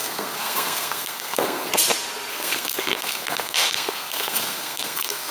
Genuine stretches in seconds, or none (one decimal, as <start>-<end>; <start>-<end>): 1.7-2.3